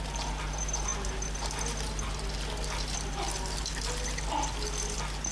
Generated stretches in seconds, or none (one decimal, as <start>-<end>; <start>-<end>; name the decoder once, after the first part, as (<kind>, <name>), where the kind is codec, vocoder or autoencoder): none